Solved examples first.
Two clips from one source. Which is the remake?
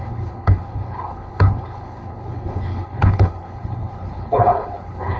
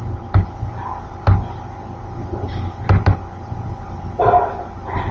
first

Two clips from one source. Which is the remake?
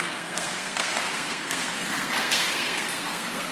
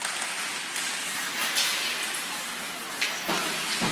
first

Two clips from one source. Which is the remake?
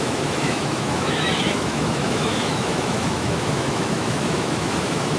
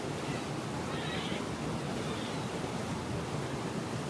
first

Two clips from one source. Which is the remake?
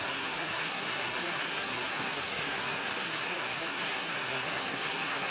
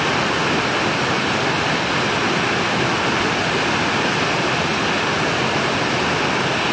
first